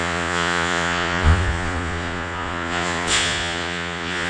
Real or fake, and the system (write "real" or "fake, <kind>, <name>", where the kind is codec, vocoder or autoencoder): fake, vocoder, Vocos